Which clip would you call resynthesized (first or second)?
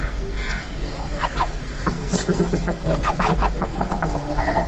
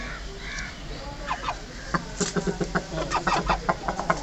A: first